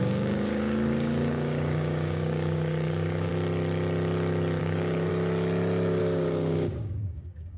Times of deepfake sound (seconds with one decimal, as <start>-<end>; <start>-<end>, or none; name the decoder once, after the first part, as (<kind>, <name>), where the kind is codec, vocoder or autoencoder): 0.0-3.3 (codec, DAC); 4.6-5.1; 6.0-7.6